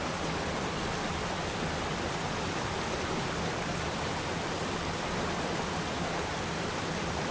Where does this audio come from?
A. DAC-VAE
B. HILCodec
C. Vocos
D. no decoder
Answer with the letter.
D